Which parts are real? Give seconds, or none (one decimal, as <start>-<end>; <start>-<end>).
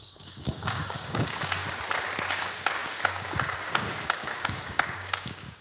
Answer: 1.6-2.3